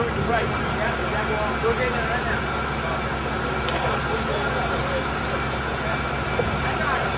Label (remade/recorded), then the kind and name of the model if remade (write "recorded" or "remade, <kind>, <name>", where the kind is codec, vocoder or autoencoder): recorded